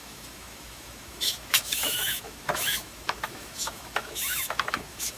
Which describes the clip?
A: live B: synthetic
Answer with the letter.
B